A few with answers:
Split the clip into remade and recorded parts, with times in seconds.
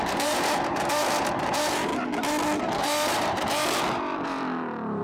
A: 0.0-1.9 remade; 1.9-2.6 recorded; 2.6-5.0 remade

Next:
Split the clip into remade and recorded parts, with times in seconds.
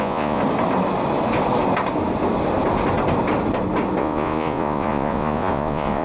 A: 0.0-0.4 remade; 0.4-4.0 recorded; 4.0-6.0 remade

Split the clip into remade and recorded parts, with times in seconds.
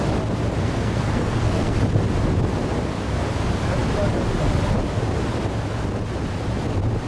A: 0.0-0.6 recorded; 0.6-1.8 remade; 1.8-7.1 recorded